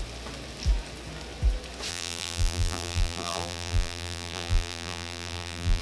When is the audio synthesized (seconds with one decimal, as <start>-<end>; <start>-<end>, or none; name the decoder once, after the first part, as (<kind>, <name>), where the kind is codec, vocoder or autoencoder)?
1.9-5.8 (vocoder, BigVGAN v2)